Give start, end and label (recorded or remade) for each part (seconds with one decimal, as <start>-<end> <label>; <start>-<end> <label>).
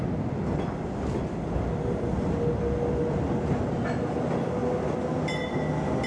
0.0-6.1 recorded